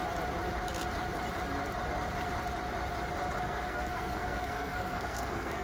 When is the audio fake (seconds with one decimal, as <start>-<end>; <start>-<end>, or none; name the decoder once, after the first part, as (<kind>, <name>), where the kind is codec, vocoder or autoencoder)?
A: 3.4-5.6 (codec, SNAC)